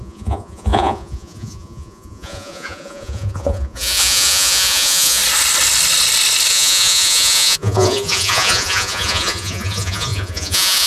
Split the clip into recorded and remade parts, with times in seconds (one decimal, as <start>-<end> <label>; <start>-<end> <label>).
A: 0.0-5.2 remade; 5.2-6.5 recorded; 6.5-10.9 remade